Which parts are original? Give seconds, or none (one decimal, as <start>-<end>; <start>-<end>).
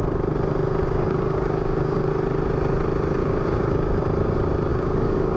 0.0-0.8; 2.1-3.2; 4.0-4.7